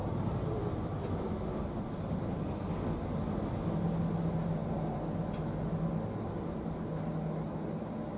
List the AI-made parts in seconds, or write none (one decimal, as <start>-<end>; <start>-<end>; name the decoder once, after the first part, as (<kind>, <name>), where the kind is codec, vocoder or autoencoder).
0.0-1.0 (vocoder, BigVGAN v2)